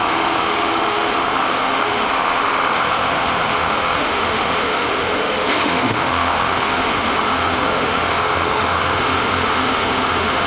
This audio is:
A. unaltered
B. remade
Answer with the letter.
B